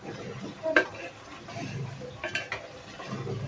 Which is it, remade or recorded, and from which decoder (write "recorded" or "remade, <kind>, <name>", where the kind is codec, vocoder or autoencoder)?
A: recorded